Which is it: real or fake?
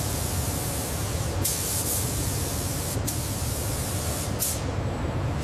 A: real